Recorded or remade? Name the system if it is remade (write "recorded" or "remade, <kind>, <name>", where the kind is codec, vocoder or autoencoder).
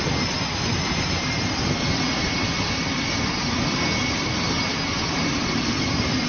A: recorded